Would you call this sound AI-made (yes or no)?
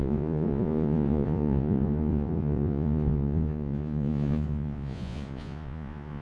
yes